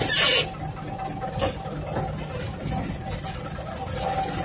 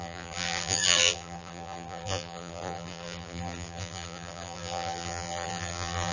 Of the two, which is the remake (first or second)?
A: second